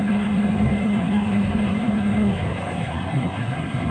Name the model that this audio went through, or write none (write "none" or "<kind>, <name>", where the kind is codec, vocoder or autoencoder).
codec, SNAC